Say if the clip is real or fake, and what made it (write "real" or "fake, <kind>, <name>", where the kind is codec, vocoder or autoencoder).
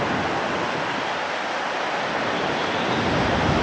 real